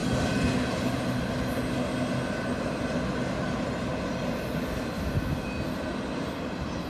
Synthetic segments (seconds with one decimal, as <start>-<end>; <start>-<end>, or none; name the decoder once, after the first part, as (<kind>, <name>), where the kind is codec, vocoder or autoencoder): none